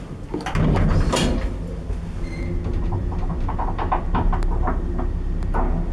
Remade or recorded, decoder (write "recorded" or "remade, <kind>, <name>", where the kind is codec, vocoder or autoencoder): recorded